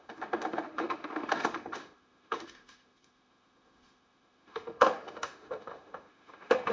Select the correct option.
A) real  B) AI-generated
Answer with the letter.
B